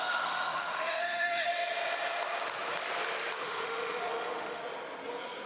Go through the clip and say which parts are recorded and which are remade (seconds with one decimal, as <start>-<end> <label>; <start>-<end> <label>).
0.0-1.5 remade; 1.5-3.4 recorded; 3.4-4.6 remade; 4.6-5.5 recorded